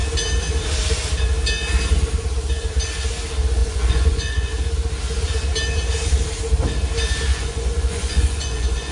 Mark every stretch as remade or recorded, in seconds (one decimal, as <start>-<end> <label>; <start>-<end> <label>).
0.0-3.6 recorded; 3.6-4.5 remade; 4.5-7.3 recorded; 7.3-8.9 remade